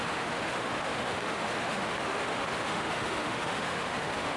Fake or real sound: fake